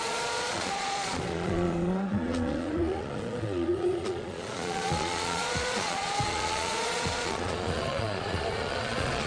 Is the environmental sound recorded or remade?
remade